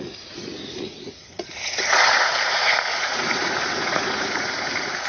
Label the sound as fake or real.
fake